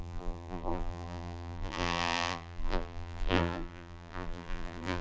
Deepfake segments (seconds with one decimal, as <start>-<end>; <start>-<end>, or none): 0.0-5.0